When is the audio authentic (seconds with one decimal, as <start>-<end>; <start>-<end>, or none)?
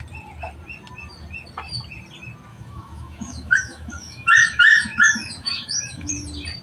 0.0-2.5; 6.1-6.6